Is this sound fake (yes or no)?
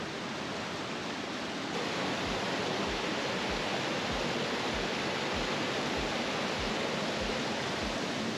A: no